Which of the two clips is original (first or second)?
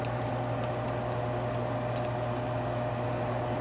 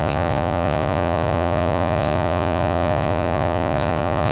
first